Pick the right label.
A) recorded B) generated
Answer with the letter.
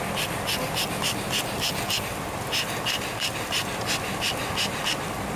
A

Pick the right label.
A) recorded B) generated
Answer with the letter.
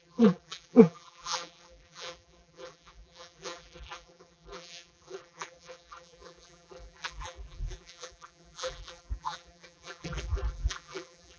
B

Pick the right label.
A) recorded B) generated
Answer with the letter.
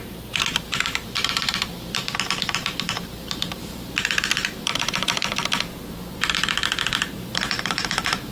B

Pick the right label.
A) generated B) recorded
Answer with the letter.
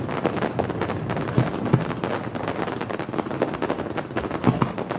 B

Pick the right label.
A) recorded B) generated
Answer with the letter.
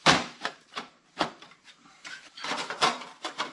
B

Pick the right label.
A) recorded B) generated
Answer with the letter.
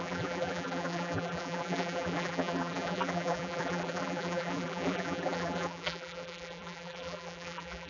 B